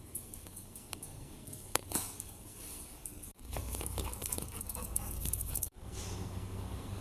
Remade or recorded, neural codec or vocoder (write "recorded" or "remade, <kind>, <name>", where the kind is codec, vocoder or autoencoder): remade, codec, SNAC